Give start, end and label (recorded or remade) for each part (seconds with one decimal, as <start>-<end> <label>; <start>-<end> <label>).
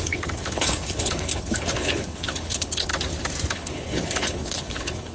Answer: 0.0-2.9 remade; 2.9-3.5 recorded; 3.5-5.1 remade